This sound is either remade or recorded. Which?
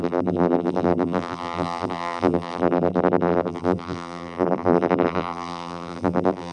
remade